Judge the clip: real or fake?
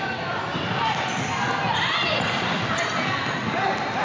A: real